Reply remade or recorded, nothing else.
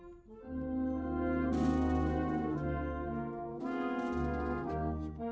recorded